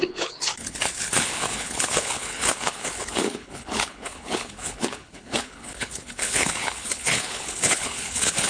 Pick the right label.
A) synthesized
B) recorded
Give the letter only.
A